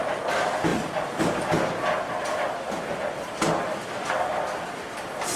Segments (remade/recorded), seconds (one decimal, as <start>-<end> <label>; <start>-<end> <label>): 0.0-5.4 recorded

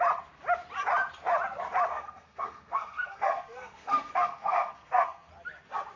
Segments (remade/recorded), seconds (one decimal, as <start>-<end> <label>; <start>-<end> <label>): 0.0-1.9 recorded; 1.9-5.3 remade; 5.3-6.0 recorded